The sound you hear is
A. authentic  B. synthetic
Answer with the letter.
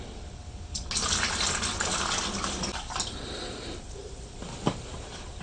A